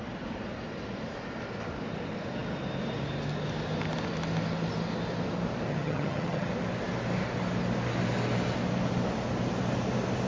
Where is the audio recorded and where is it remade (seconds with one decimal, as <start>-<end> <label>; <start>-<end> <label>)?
0.0-5.7 recorded; 5.7-6.5 remade; 6.5-10.3 recorded